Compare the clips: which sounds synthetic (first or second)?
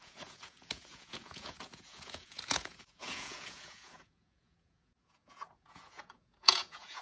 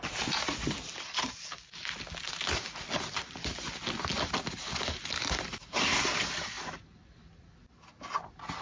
first